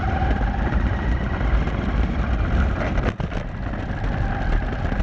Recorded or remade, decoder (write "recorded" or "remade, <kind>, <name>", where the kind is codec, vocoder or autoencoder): remade, vocoder, BigVGAN v2